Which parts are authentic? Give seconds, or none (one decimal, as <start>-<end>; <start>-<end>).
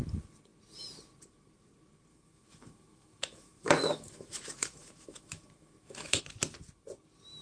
0.0-2.1; 6.2-7.4